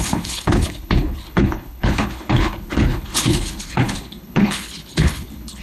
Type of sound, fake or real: fake